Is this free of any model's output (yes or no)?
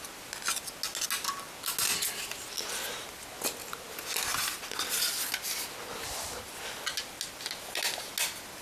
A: yes